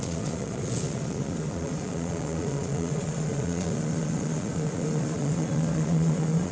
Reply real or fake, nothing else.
fake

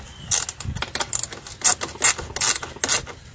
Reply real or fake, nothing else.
real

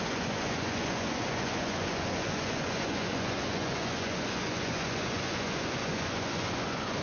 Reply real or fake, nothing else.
fake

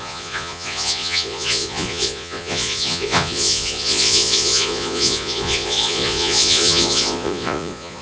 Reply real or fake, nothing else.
fake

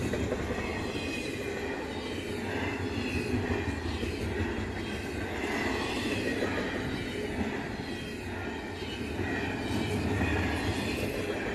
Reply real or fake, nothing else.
real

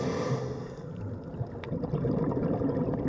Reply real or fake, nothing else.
real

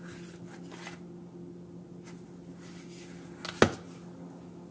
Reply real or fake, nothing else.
real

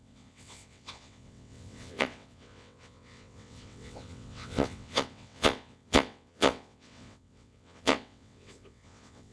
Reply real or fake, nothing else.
fake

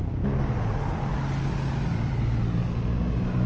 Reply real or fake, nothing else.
real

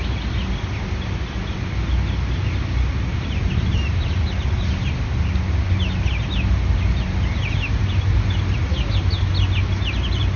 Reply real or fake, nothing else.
real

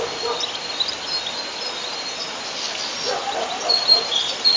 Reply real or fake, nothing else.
real